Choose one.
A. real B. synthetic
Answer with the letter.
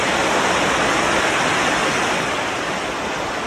A